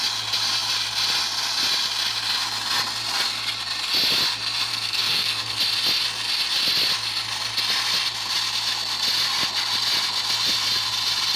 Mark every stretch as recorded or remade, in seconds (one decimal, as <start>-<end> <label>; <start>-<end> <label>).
0.0-4.7 recorded; 4.7-5.6 remade; 5.6-11.4 recorded